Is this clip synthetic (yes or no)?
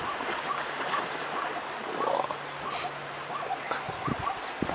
no